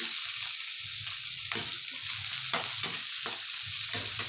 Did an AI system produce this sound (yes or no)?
no